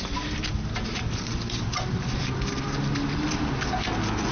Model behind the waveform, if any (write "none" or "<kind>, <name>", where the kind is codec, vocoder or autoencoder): none